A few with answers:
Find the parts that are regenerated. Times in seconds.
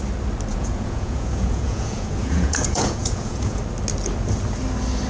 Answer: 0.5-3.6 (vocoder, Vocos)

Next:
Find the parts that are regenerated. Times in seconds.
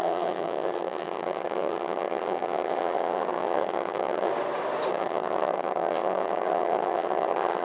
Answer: 0.0-4.3 (vocoder, HiFi-GAN); 4.9-7.6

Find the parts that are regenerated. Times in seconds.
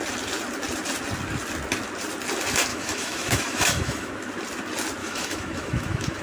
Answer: 2.7-4.1 (autoencoder, DAC-VAE); 5.0-6.2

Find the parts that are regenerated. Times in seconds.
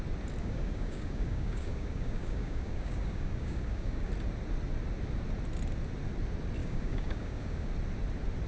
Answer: 0.4-4.1 (codec, DAC); 6.6-7.7